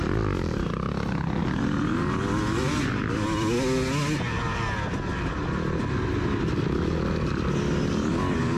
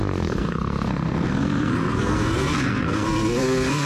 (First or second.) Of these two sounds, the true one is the first